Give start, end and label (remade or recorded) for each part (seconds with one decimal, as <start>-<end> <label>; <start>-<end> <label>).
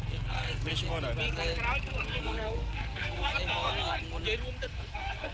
0.0-0.7 remade; 0.7-2.0 recorded; 2.0-3.3 remade; 3.3-4.6 recorded; 4.6-5.3 remade